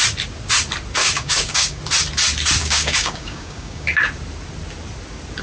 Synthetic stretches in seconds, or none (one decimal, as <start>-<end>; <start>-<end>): 1.0-1.8; 2.6-4.0